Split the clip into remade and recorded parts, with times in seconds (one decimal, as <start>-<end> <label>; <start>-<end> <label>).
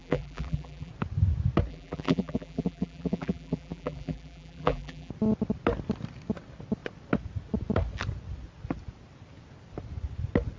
0.0-0.9 remade; 0.9-1.7 recorded; 1.7-5.1 remade; 5.1-10.6 recorded